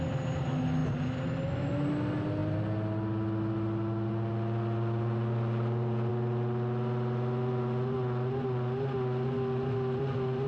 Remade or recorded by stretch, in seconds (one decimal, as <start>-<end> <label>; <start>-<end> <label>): 0.0-10.5 recorded